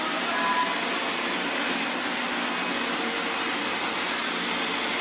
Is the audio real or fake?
real